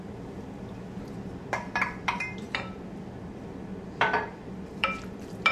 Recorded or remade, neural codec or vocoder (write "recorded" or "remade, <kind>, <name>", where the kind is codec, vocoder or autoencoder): remade, vocoder, BigVGAN v2